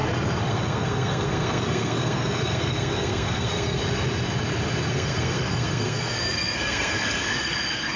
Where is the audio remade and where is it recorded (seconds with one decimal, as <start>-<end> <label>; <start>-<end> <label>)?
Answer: 0.0-0.5 recorded; 0.5-3.8 remade; 3.8-4.9 recorded; 4.9-8.0 remade